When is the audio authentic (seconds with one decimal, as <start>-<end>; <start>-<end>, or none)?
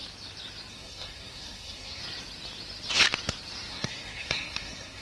0.0-0.7; 2.0-3.7